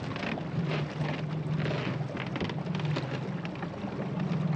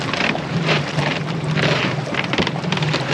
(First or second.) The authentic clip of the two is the first